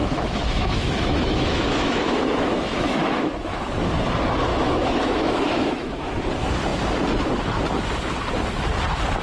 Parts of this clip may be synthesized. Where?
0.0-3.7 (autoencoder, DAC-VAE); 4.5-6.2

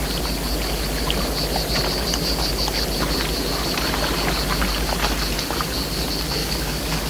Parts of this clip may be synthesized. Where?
6.4-7.1 (codec, DAC)

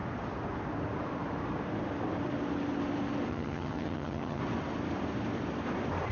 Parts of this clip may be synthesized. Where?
3.3-4.4 (vocoder, HiFi-GAN)